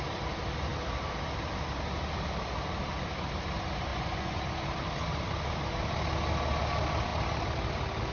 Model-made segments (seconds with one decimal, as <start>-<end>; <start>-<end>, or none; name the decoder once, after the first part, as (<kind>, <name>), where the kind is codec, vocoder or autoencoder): 3.9-4.4 (vocoder, Vocos)